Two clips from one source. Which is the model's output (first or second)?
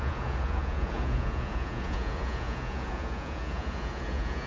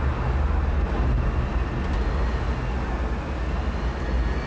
first